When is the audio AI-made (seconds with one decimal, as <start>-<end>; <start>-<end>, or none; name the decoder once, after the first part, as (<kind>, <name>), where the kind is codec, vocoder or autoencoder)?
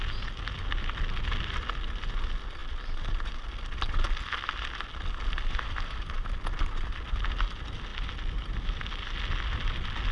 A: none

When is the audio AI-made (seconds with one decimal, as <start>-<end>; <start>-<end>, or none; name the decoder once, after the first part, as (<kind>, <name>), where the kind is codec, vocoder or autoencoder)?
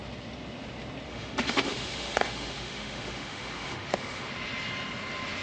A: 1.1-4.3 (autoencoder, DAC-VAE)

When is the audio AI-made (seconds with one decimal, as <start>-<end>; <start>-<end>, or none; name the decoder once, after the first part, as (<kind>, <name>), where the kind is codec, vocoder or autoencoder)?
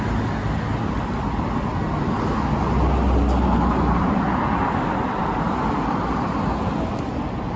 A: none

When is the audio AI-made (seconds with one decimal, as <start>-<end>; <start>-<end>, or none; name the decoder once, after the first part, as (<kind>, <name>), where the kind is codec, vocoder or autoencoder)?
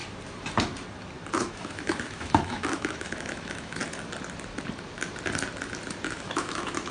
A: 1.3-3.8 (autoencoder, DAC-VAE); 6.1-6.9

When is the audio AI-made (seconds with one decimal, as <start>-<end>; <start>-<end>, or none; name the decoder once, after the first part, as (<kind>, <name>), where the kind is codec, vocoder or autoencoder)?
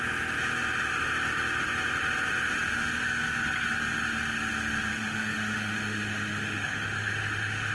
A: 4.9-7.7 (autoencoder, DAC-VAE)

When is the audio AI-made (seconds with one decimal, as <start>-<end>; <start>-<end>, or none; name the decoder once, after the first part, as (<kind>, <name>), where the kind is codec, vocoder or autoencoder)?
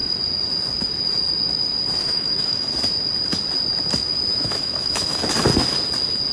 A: 2.0-2.7 (autoencoder, DAC-VAE); 4.3-5.2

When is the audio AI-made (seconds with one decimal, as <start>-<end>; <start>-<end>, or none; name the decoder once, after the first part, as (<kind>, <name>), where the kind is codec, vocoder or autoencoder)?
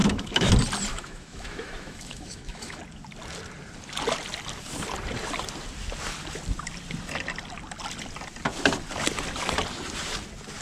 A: 0.0-0.5 (autoencoder, DAC-VAE); 0.9-2.8